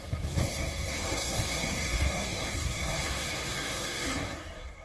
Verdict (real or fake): fake